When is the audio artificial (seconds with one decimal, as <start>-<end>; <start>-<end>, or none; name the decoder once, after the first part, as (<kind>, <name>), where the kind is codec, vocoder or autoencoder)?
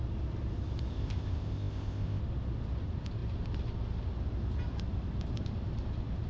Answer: 0.9-2.2 (codec, ZipCodec)